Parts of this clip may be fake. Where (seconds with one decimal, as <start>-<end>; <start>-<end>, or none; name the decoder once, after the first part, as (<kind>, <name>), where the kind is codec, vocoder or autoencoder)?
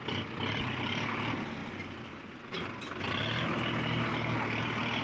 none